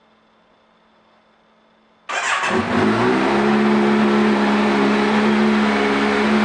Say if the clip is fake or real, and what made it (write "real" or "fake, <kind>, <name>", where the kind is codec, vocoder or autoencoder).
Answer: real